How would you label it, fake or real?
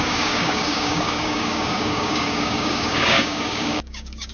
fake